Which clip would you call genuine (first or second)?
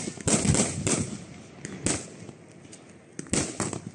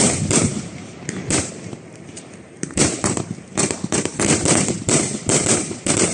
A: first